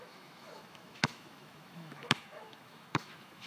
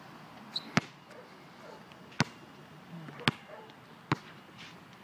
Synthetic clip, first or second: first